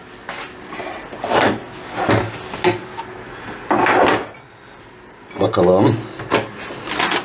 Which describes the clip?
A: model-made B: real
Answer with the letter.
B